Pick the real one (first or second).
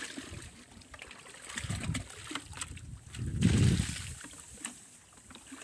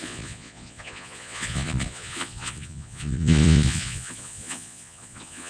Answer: first